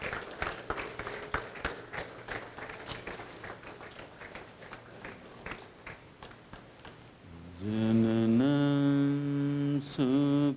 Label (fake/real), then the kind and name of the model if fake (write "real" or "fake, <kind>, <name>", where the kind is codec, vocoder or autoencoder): real